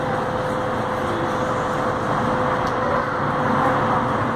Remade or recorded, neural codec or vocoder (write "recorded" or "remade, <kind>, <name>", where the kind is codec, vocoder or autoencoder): recorded